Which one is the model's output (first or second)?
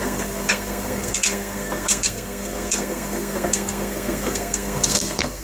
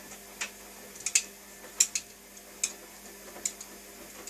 first